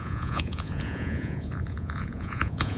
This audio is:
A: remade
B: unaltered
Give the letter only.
A